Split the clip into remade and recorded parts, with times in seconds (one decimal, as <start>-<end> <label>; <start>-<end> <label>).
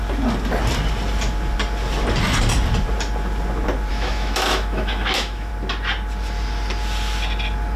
0.0-3.9 recorded; 3.9-5.5 remade; 5.5-7.8 recorded